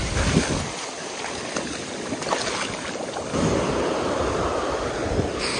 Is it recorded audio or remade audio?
recorded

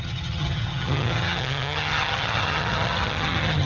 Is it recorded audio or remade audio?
remade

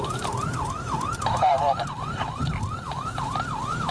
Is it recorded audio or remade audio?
remade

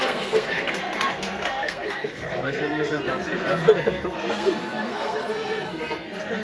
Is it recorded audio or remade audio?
remade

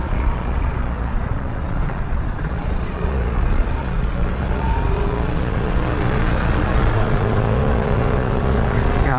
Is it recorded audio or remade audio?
remade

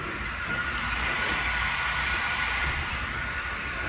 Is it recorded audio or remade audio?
remade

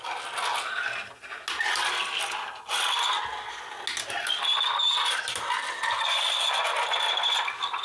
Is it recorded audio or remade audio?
recorded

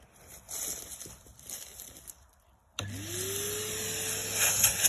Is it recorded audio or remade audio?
recorded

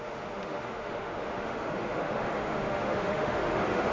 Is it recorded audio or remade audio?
remade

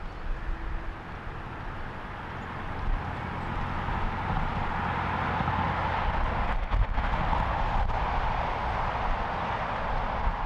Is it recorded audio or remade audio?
recorded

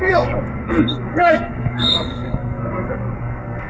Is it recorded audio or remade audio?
remade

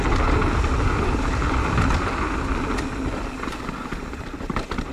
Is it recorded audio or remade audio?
recorded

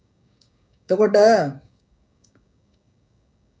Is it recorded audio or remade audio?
remade